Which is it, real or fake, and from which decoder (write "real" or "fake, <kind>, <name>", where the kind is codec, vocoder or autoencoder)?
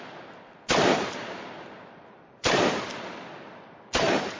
fake, vocoder, BigVGAN v2